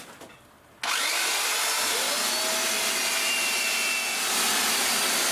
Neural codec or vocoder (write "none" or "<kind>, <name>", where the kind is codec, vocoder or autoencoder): none